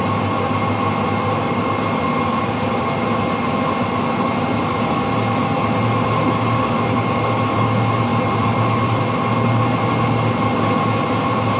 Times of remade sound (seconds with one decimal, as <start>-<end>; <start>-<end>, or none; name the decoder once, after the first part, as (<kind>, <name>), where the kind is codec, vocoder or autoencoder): none